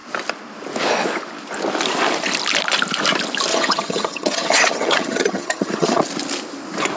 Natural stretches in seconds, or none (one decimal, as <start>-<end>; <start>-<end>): 0.0-3.5; 6.0-7.0